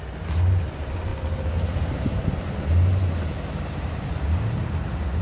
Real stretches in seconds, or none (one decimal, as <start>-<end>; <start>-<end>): 0.0-5.2